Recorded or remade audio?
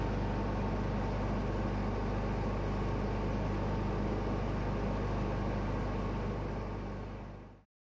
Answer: recorded